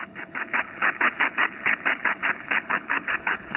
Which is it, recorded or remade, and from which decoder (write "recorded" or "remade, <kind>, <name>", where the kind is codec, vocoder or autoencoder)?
remade, codec, HILCodec